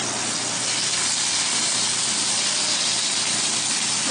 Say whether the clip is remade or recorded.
recorded